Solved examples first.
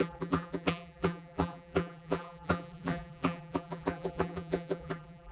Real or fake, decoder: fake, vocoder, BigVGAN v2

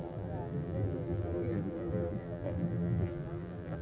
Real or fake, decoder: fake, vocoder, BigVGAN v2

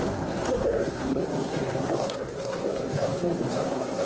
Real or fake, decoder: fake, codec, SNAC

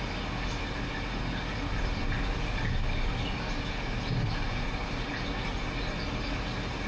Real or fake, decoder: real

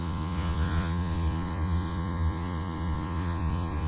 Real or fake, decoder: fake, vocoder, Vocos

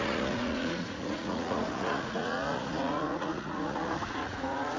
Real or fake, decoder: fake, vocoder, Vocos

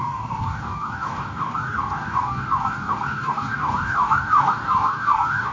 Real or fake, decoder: fake, codec, DAC